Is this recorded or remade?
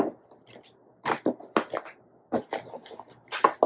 recorded